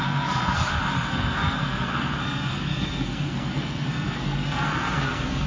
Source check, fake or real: fake